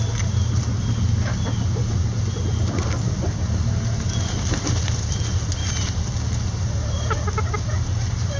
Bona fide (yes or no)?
yes